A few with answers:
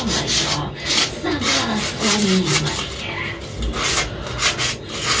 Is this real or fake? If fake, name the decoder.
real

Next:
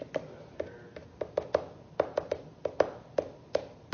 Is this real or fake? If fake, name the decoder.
real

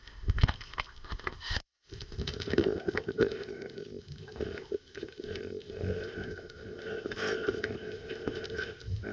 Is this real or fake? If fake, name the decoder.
fake, codec, ZipCodec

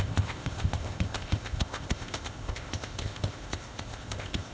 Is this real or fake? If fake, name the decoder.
fake, codec, ZipCodec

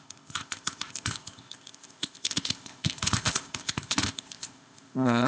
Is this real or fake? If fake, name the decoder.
fake, codec, ZipCodec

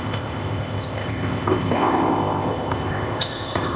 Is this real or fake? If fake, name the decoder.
fake, codec, ZipCodec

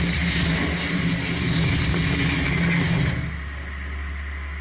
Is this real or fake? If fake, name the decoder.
real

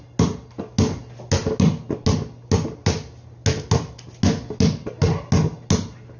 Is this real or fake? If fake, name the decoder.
real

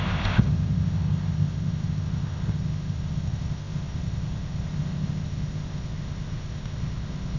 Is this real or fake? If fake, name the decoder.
fake, codec, ZipCodec